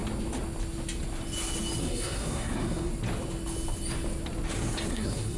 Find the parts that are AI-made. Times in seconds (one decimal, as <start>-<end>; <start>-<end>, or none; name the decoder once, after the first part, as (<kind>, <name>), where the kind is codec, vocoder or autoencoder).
1.8-2.9 (codec, SNAC); 4.9-5.4